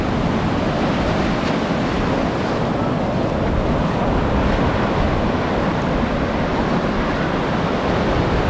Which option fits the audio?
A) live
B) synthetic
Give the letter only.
A